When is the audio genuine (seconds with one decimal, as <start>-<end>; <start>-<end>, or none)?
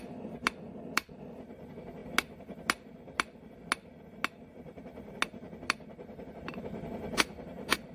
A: 0.0-7.9